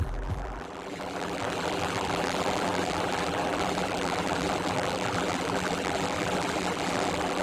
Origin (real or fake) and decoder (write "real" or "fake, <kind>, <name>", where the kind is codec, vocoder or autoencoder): fake, vocoder, BigVGAN v2